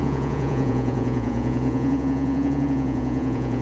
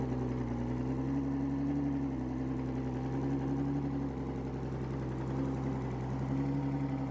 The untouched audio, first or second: second